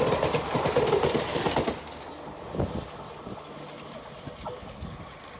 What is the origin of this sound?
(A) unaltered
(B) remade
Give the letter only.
A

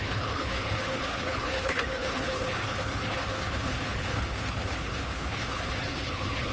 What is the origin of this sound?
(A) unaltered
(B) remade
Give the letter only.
B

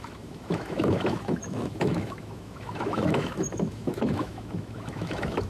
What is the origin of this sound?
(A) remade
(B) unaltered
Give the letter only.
A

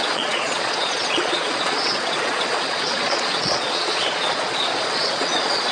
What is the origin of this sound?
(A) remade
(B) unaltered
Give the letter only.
A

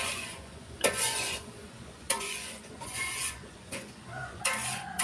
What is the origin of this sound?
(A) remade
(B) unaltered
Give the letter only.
A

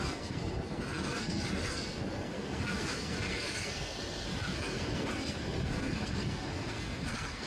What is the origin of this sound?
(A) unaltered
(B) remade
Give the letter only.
B